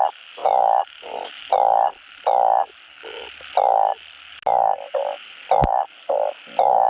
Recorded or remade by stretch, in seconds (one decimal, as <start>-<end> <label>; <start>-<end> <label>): 0.0-6.9 recorded